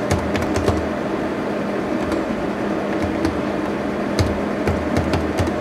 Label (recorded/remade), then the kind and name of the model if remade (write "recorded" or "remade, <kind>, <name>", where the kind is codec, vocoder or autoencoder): recorded